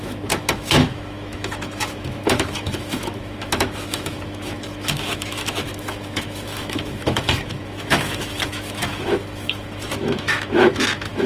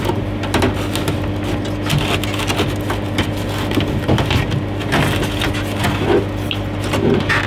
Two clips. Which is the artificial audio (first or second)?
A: first